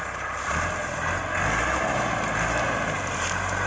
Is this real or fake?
real